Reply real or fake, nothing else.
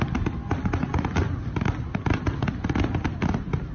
real